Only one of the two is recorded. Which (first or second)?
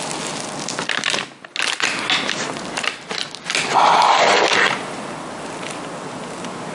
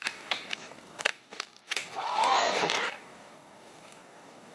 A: first